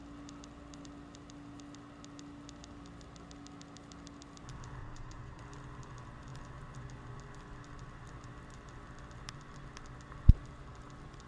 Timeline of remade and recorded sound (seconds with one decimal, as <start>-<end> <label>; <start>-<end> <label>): 0.0-4.8 recorded; 4.8-5.4 remade; 5.4-11.3 recorded